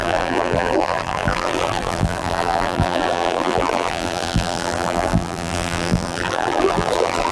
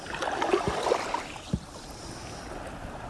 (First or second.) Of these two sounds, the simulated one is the first